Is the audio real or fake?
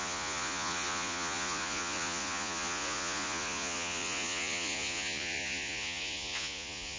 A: fake